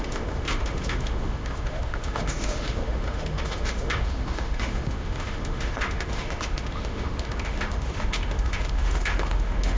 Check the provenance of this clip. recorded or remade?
remade